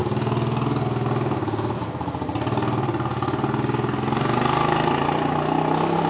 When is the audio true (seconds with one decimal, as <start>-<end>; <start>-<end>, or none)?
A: 0.0-6.1